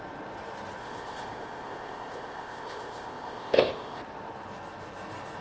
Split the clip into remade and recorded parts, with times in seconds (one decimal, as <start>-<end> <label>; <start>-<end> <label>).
0.0-0.8 recorded; 0.8-4.0 remade; 4.0-5.4 recorded